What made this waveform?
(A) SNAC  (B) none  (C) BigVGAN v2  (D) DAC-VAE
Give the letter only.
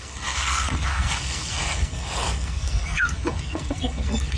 A